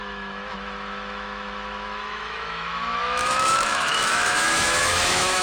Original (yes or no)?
no